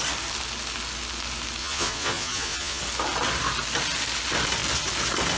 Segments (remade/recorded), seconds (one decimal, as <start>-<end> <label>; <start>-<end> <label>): 0.0-1.6 recorded; 1.6-2.8 remade; 2.8-5.4 recorded